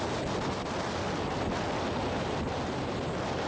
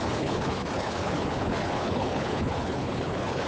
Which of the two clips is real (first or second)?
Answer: first